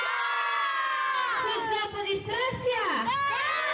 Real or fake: real